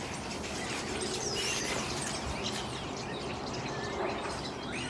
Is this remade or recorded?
recorded